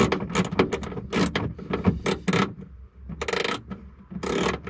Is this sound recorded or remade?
recorded